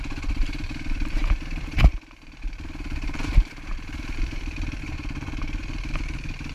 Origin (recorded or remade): remade